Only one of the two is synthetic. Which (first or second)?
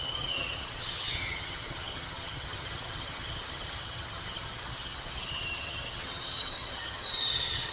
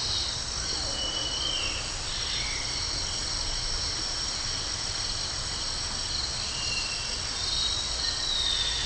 first